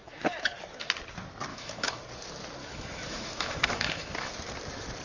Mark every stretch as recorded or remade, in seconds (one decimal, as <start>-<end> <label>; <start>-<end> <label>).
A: 0.0-0.5 remade; 0.5-1.5 recorded; 1.5-2.0 remade; 2.0-2.6 recorded; 2.6-4.3 remade; 4.3-5.0 recorded